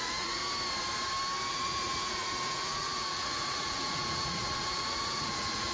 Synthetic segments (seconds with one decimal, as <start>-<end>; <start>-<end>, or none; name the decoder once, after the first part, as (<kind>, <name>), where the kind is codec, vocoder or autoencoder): 0.0-0.4 (vocoder, Vocos); 1.5-5.7